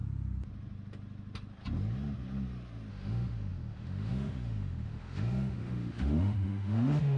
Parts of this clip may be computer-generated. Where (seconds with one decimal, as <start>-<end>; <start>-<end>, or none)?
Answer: 2.9-7.2